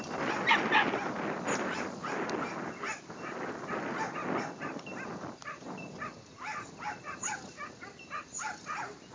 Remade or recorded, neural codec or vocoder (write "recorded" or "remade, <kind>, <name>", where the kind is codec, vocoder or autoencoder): recorded